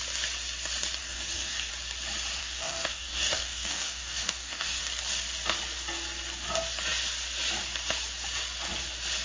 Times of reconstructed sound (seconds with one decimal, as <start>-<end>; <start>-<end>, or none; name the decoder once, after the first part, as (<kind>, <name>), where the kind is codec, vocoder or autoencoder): 1.0-1.7 (codec, DAC); 2.4-4.8